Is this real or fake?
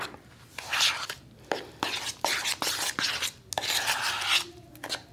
real